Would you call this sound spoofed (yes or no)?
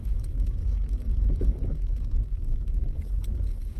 yes